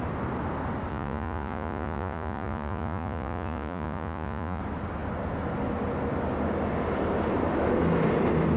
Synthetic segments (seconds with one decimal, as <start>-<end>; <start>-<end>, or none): 0.9-4.6